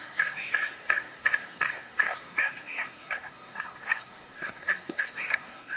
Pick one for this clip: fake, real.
fake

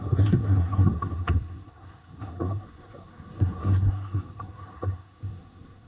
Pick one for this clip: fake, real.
fake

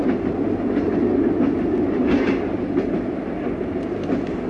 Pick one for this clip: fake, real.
real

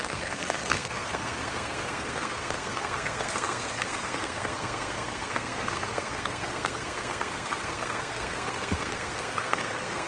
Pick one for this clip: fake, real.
fake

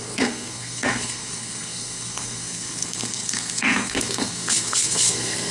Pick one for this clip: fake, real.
fake